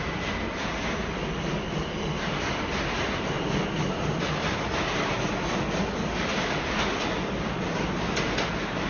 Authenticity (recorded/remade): recorded